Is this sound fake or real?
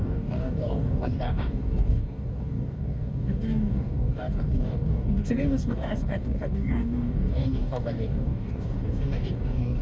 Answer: fake